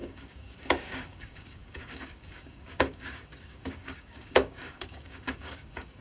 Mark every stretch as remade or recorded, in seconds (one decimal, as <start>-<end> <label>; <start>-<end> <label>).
0.0-6.0 remade